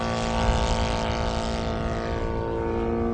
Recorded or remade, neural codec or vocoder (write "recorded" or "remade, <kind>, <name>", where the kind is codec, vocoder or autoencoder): recorded